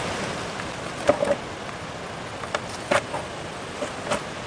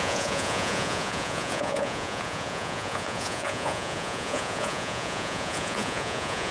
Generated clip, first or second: second